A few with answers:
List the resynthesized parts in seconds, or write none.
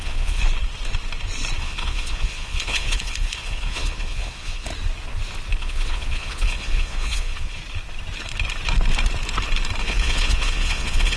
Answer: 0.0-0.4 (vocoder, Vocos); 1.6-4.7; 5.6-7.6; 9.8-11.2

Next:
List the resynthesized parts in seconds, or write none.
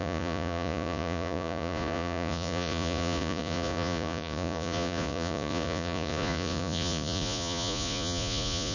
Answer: 0.0-8.7 (vocoder, Vocos)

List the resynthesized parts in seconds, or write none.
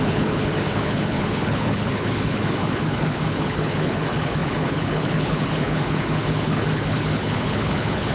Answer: 0.0-8.1 (codec, HILCodec)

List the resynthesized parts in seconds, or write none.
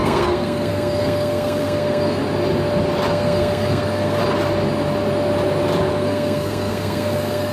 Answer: 0.0-2.2 (codec, SNAC); 3.1-4.2; 5.9-7.5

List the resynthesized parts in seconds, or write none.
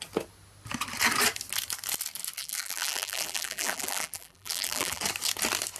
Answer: 2.4-5.0 (vocoder, BigVGAN v2)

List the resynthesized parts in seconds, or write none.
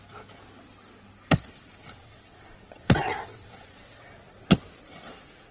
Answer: 1.8-4.6 (vocoder, WaveNeXt)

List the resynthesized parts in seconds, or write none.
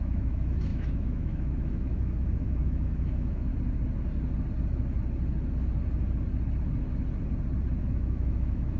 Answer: 0.0-3.5 (autoencoder, DAC-VAE); 7.8-8.8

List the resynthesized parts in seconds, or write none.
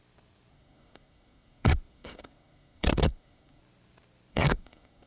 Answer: 0.5-3.6 (codec, SNAC); 4.3-5.1